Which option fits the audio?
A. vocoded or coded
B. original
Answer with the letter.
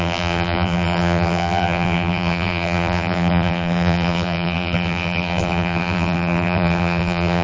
A